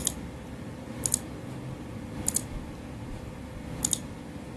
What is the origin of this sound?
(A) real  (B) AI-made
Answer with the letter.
A